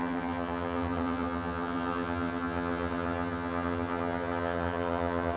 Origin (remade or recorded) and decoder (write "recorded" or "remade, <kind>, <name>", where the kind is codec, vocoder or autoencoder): remade, vocoder, HiFi-GAN